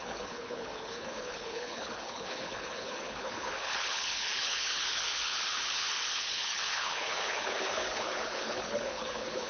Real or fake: fake